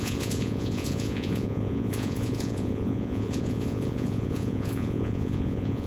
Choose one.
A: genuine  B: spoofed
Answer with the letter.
B